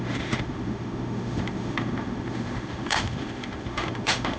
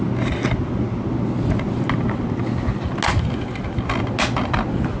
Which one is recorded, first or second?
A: second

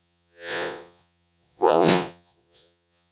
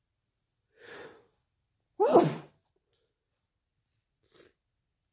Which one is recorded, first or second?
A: second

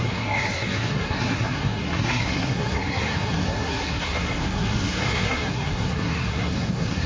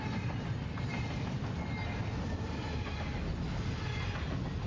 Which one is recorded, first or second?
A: second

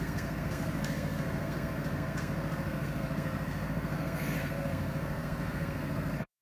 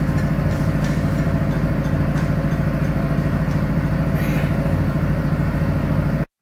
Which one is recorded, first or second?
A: second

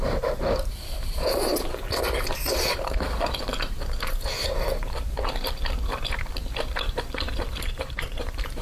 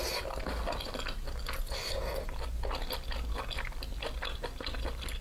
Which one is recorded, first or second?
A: second